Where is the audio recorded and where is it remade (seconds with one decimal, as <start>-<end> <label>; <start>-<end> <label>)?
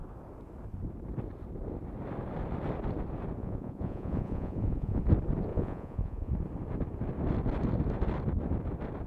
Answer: 0.0-3.4 recorded; 3.4-5.0 remade; 5.0-5.5 recorded; 5.5-6.3 remade; 6.3-9.1 recorded